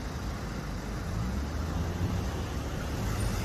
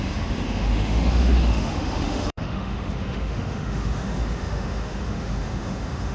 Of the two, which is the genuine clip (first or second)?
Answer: first